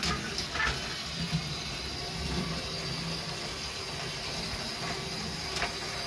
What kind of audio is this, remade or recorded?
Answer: recorded